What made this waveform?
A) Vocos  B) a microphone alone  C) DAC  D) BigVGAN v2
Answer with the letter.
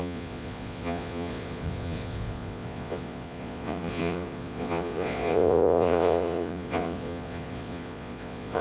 A